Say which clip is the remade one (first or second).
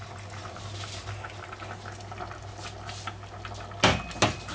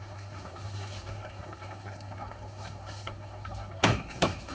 second